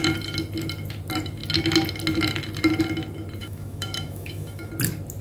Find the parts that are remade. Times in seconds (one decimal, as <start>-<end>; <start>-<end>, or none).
3.4-4.7

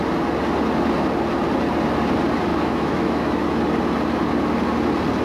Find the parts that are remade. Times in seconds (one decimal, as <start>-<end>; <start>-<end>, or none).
2.5-3.6

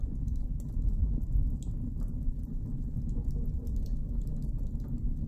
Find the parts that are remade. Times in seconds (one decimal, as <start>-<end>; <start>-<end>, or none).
none

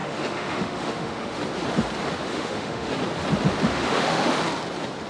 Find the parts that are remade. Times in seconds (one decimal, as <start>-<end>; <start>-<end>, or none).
0.0-1.4; 2.3-2.9; 3.7-4.4

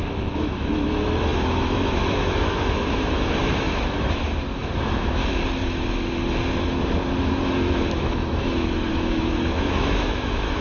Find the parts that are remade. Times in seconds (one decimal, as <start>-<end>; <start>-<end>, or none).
0.0-5.2; 7.2-10.6

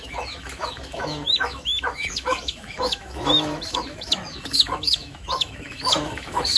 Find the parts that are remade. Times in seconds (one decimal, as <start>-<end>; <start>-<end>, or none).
0.0-6.6